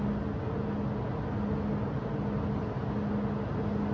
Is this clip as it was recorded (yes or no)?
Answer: yes